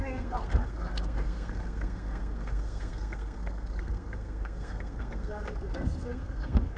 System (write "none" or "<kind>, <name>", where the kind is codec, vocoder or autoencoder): codec, SNAC